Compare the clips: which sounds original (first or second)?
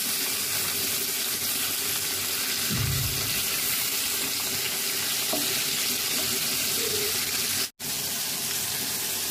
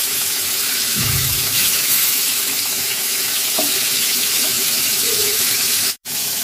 first